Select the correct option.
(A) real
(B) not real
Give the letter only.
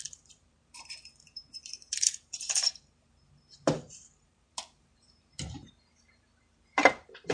B